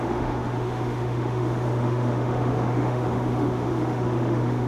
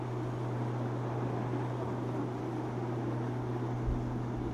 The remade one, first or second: first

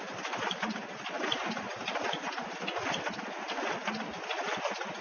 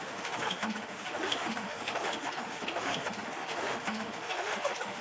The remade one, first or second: second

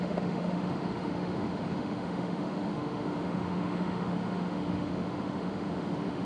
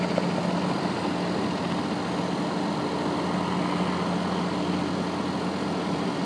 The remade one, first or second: first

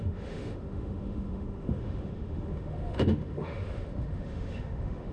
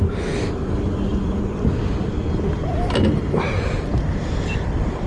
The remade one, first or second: first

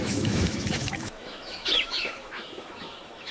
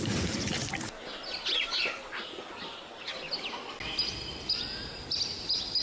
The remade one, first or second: first